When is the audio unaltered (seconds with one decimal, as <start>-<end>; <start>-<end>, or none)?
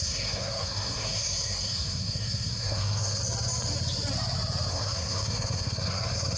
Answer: 3.2-4.7